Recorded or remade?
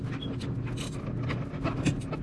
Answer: recorded